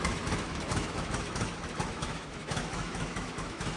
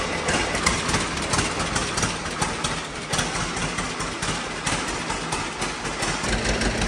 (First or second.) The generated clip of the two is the first